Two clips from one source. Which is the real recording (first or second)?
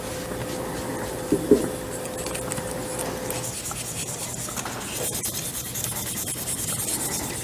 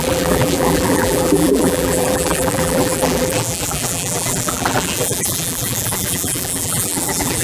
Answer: first